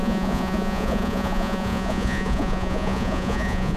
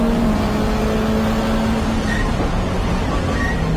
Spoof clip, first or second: first